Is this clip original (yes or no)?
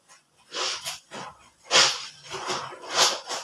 no